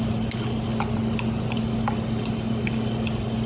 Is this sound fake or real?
real